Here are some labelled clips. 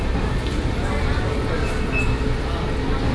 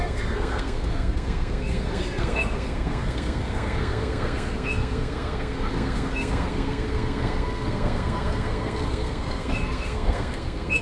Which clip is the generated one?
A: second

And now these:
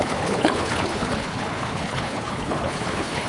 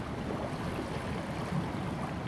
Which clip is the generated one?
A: first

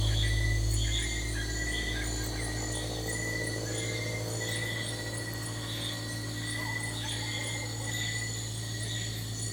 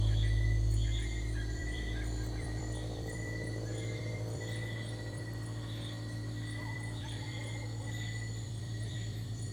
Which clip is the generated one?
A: second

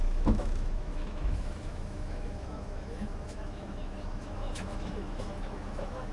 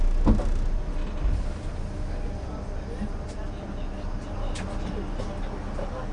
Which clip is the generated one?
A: first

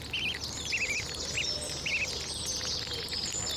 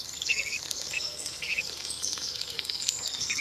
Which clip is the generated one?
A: second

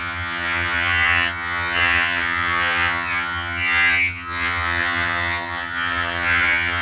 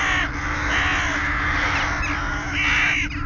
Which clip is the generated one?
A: first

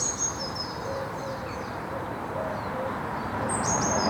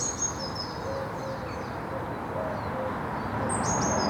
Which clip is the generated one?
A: first